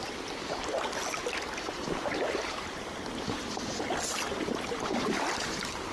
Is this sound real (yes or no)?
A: yes